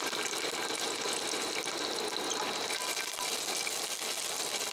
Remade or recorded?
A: recorded